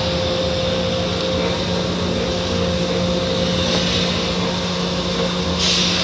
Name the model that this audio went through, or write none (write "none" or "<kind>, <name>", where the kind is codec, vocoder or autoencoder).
none